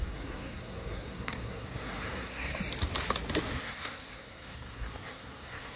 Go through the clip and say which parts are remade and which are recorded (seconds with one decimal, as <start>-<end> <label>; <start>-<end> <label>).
0.0-2.6 remade; 2.6-3.4 recorded; 3.4-5.8 remade